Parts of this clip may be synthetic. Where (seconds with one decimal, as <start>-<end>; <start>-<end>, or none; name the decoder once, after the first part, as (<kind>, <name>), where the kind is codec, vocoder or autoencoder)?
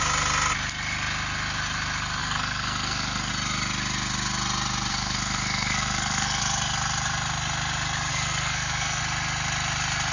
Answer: 2.2-3.3 (codec, SNAC); 4.9-6.4; 8.1-9.0